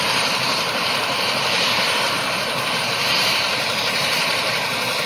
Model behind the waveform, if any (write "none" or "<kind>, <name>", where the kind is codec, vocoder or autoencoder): vocoder, BigVGAN v2